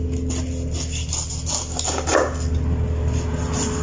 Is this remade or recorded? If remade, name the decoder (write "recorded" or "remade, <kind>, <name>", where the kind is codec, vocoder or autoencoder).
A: recorded